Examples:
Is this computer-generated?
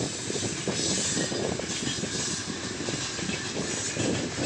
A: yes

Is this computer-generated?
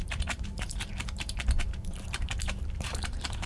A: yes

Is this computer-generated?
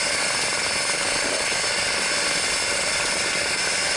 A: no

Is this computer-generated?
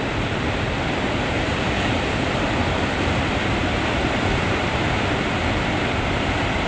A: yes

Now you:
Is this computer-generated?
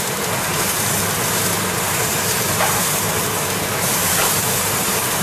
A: yes